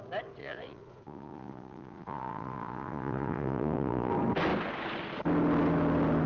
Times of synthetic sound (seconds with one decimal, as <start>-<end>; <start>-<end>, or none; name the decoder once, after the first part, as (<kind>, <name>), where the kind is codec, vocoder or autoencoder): 0.4-4.1 (vocoder, Vocos)